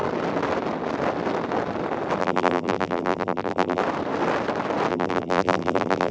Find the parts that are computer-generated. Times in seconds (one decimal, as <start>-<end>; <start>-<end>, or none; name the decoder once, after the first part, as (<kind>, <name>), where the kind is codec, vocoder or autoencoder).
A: 2.2-3.8 (vocoder, BigVGAN v2); 4.9-6.1